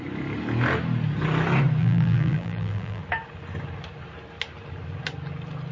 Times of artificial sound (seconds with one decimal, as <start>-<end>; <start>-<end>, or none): 1.8-3.0